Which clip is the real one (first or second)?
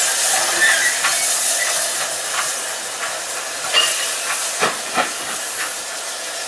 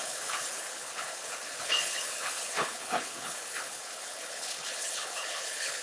first